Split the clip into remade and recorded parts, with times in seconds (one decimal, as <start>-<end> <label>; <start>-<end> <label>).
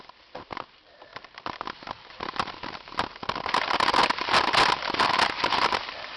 0.0-6.2 recorded